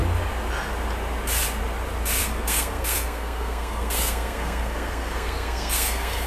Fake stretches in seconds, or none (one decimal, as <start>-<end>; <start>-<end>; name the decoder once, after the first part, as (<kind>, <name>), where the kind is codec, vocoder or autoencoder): 2.2-6.3 (codec, SNAC)